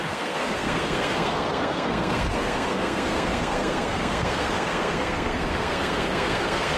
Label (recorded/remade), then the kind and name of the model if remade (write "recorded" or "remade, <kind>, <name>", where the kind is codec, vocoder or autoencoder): remade, codec, SNAC